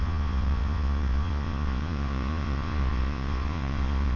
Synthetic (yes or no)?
yes